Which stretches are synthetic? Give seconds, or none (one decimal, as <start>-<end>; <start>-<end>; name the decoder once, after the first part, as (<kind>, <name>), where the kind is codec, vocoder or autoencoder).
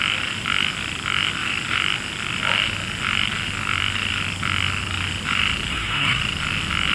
5.7-6.2 (codec, SNAC)